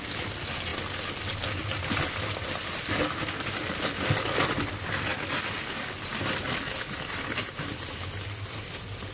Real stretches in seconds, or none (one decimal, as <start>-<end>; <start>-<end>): 0.0-9.1